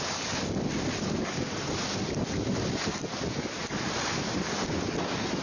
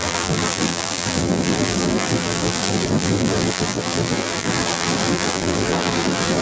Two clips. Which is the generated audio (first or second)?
second